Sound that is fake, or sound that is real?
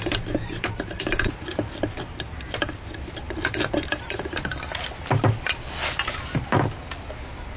real